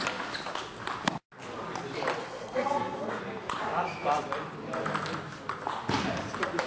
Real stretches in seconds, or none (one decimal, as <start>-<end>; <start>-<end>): 0.0-2.2; 3.2-6.7